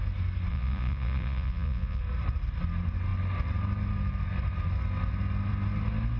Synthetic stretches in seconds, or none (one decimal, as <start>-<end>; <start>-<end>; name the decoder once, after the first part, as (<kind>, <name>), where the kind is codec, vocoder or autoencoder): 0.5-2.0 (vocoder, Vocos)